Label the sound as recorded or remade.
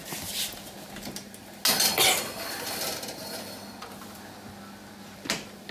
recorded